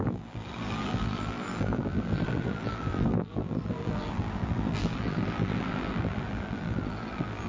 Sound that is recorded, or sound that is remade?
remade